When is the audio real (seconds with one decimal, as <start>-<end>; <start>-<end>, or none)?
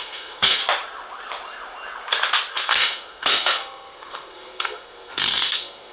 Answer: 0.6-2.5